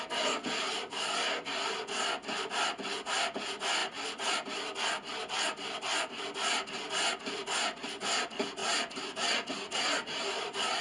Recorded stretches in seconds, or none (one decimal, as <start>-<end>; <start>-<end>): 0.0-10.8